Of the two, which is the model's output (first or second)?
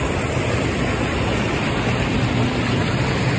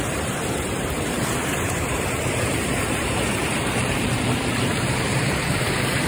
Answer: second